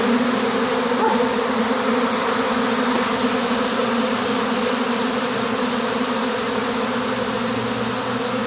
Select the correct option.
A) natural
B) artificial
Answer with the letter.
A